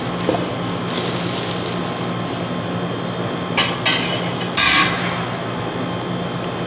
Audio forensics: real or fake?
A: real